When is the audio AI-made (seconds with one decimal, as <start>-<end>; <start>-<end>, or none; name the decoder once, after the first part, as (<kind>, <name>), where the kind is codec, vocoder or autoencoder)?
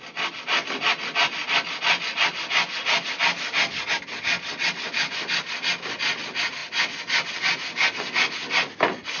none